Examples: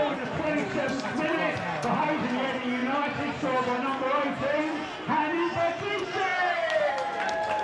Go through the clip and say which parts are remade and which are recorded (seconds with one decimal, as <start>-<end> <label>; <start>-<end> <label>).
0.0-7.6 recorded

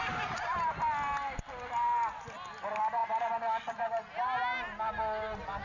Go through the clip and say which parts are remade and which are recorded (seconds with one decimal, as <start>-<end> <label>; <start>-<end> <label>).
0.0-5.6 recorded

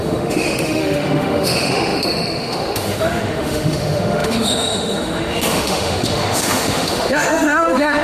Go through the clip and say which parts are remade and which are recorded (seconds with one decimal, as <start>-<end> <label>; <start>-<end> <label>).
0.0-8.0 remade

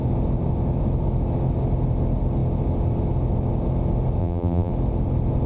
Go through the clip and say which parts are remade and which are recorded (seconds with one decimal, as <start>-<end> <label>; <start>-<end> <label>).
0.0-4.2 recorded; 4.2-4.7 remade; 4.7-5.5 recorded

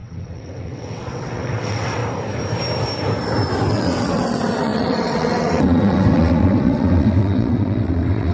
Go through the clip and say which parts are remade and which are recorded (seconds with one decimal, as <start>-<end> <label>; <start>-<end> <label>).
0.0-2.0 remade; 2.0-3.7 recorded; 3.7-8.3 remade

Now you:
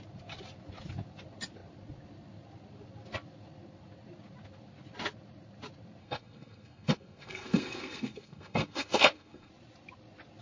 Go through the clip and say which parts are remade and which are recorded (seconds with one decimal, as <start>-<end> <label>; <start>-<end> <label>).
0.0-6.0 recorded; 6.0-9.5 remade; 9.5-10.4 recorded